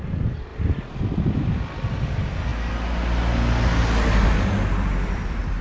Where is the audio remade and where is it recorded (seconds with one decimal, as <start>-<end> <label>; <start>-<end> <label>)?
0.0-0.5 remade; 0.5-1.0 recorded; 1.0-2.5 remade; 2.5-4.7 recorded; 4.7-5.6 remade